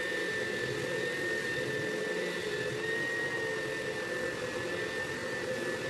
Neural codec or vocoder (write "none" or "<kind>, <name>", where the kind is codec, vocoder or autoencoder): none